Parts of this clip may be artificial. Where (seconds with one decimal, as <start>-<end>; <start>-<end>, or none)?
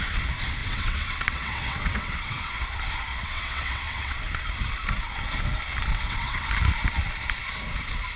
0.6-2.5; 3.1-4.2; 5.9-6.5